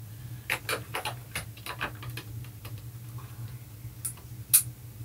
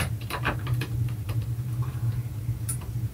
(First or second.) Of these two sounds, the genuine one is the first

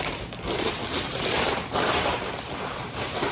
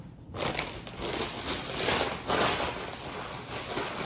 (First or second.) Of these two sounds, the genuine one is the second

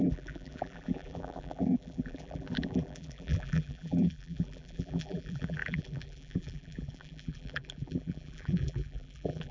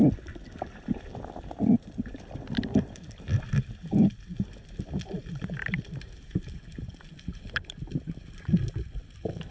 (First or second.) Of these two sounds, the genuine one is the second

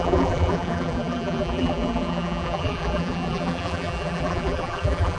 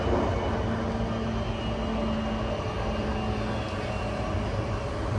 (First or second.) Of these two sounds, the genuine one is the second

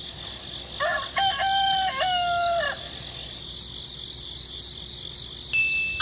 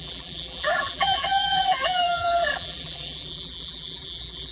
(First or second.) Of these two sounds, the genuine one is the first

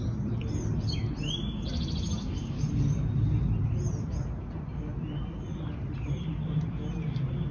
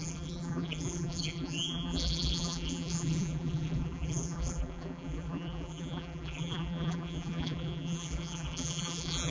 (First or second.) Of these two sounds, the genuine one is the first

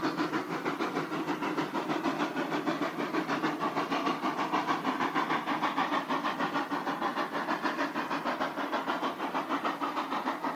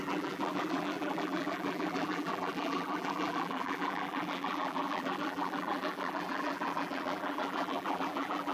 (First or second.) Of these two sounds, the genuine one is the first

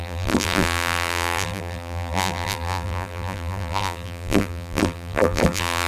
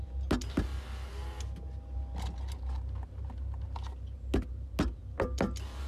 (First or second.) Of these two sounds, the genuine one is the second